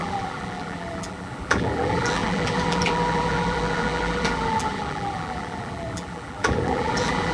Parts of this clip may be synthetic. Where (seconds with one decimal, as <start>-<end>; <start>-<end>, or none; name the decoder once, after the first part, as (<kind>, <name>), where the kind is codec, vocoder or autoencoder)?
0.0-7.3 (vocoder, BigVGAN v2)